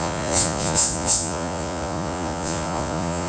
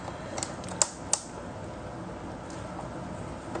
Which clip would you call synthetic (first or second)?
first